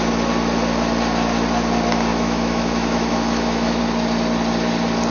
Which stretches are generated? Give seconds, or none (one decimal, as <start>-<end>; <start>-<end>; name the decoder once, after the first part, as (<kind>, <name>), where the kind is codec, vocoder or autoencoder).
2.1-3.8 (autoencoder, DAC-VAE)